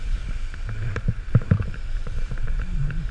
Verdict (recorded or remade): remade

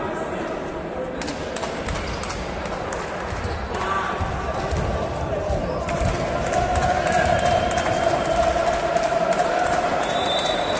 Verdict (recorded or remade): recorded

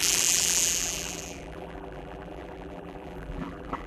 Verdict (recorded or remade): remade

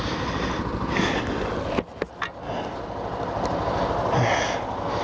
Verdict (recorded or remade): recorded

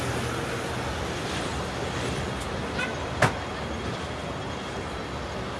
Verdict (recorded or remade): recorded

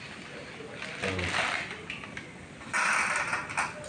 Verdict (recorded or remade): recorded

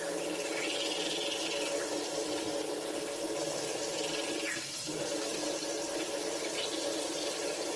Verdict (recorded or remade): recorded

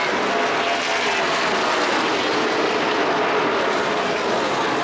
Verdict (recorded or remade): recorded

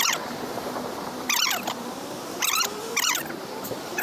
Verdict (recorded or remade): remade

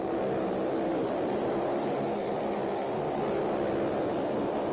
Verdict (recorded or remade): remade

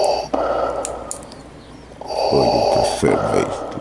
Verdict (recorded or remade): recorded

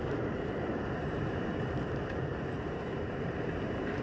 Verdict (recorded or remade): remade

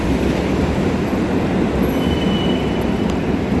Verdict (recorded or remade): remade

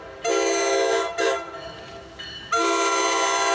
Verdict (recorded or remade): recorded